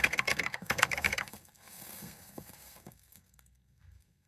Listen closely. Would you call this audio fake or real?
fake